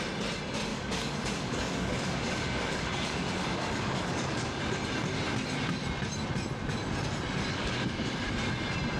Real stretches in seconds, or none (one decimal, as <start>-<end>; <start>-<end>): 0.0-0.7; 4.6-7.5; 8.3-9.0